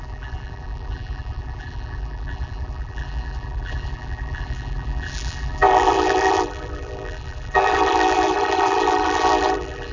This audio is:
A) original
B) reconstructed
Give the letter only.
B